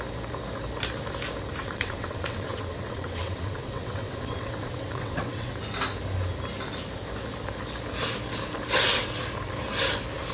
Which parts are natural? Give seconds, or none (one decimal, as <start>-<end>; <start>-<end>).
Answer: 0.0-1.6; 5.6-10.3